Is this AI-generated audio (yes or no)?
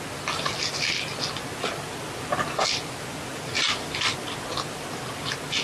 no